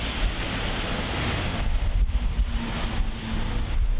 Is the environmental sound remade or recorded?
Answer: recorded